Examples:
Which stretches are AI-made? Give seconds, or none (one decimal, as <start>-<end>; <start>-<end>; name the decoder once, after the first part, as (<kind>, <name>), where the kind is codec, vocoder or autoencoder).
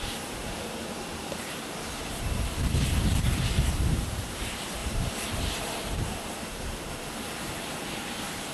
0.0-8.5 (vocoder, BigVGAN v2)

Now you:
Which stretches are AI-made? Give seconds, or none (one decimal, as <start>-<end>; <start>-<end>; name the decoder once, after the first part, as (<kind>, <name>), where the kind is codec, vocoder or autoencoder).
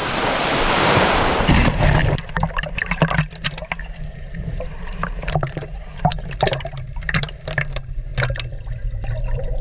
0.8-2.0 (vocoder, BigVGAN v2); 3.8-8.1; 9.2-9.6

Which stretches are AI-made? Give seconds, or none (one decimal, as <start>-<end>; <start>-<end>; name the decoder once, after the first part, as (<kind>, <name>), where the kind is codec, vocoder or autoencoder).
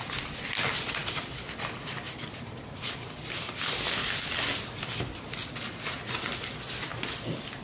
0.0-7.6 (vocoder, BigVGAN v2)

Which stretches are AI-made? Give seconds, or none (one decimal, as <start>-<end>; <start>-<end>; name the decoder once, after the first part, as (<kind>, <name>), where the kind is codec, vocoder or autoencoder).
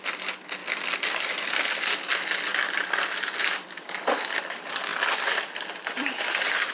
none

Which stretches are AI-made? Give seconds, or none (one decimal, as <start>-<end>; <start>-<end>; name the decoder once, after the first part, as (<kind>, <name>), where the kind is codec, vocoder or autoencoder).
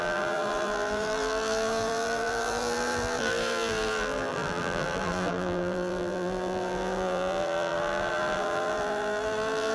0.0-9.7 (vocoder, BigVGAN v2)